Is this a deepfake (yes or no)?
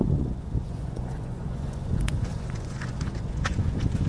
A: yes